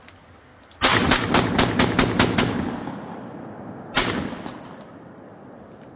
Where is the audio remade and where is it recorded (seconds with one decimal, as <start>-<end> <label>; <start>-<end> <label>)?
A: 0.0-6.0 recorded

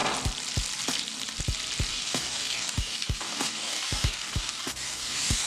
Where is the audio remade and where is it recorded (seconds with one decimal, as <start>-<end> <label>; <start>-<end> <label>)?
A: 0.0-1.9 recorded; 1.9-5.5 remade

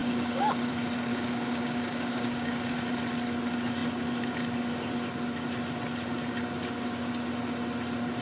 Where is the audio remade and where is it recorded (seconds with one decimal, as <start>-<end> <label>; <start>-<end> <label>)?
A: 0.0-0.7 remade; 0.7-1.1 recorded; 1.1-2.9 remade; 2.9-8.2 recorded

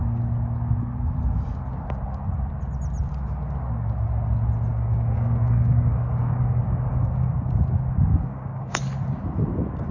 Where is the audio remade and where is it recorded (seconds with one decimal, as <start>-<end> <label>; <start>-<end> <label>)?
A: 0.0-4.7 recorded; 4.7-7.6 remade; 7.6-8.1 recorded; 8.1-8.8 remade; 8.8-9.9 recorded

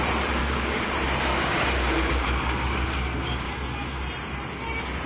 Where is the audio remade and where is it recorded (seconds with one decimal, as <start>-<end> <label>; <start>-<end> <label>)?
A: 0.0-0.4 recorded; 0.4-0.9 remade; 0.9-1.3 recorded; 1.3-3.5 remade; 3.5-5.1 recorded

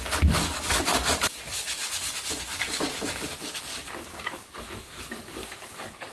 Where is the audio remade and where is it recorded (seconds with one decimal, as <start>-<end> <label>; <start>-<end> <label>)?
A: 0.0-6.1 remade

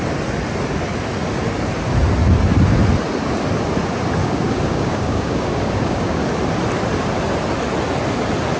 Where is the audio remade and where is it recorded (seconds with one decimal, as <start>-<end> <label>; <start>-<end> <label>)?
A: 0.0-4.2 recorded; 4.2-6.2 remade; 6.2-8.6 recorded